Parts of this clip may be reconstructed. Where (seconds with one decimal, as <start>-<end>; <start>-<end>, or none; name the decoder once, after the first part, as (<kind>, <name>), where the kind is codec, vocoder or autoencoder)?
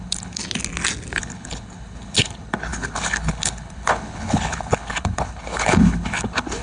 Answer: 0.0-0.4 (codec, HILCodec); 1.2-6.6